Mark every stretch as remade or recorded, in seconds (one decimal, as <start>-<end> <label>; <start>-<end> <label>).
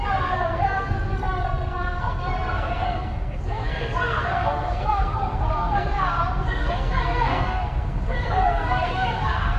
0.0-9.6 remade